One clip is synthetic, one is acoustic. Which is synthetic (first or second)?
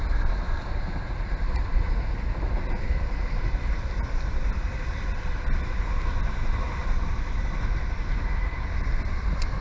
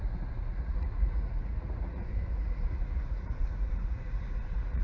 second